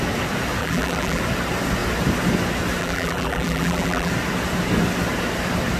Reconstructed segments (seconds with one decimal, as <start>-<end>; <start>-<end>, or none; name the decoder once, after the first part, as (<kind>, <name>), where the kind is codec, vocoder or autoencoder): 0.6-1.2 (vocoder, BigVGAN v2); 2.8-4.1